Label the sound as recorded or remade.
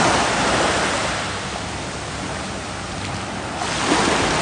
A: recorded